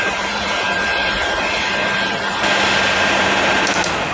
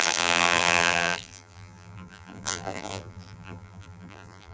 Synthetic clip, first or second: second